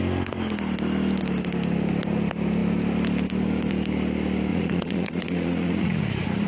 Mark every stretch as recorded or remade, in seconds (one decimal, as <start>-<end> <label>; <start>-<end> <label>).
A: 0.0-4.5 recorded; 4.5-6.5 remade